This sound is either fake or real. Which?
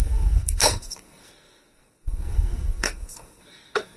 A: fake